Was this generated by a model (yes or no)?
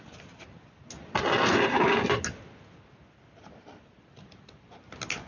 no